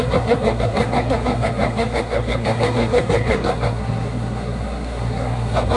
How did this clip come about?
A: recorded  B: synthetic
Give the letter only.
B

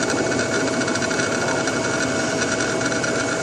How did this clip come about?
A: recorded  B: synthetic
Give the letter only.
A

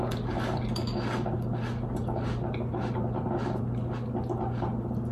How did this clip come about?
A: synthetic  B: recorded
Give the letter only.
B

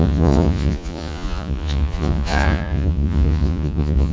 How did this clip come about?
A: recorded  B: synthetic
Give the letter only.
B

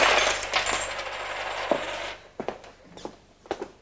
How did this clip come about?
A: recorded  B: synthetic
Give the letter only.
A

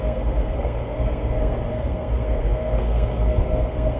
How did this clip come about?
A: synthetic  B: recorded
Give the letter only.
A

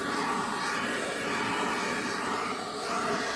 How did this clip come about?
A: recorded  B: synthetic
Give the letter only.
A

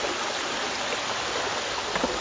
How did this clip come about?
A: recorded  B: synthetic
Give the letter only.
A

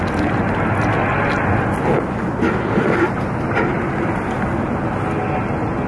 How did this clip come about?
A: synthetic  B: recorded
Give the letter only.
B